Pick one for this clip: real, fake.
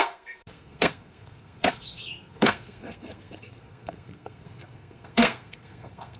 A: fake